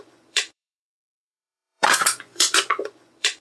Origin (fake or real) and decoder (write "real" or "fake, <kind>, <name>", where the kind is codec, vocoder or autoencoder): fake, vocoder, Vocos